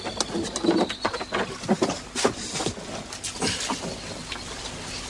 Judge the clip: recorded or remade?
recorded